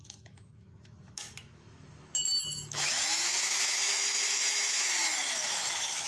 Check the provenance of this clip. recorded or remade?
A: remade